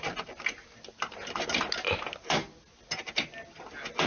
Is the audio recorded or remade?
recorded